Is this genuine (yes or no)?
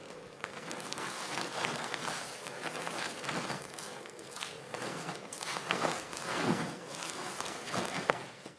no